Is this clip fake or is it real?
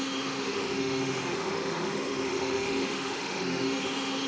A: fake